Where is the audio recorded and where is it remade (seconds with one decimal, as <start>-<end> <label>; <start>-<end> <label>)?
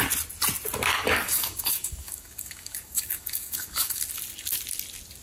0.0-0.9 recorded; 0.9-4.0 remade; 4.0-5.2 recorded